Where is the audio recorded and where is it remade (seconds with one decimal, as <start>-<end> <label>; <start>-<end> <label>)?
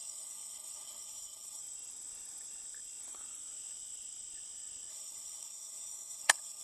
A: 0.0-1.6 remade; 1.6-4.9 recorded; 4.9-6.6 remade